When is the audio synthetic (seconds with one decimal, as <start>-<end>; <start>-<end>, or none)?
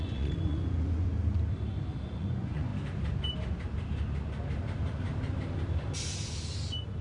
0.0-1.1; 2.0-2.7